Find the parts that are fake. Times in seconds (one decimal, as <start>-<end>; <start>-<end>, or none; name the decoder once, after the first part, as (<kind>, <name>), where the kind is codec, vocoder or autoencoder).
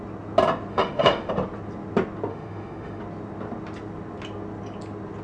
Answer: 0.7-1.3 (autoencoder, DAC-VAE); 2.3-3.0